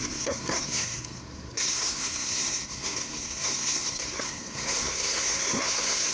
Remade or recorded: remade